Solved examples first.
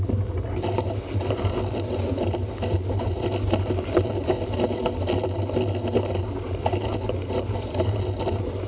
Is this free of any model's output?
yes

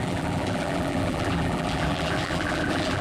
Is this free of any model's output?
no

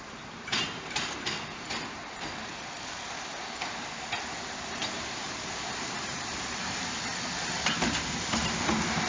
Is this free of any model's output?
no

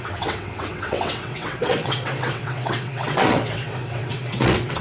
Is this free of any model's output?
no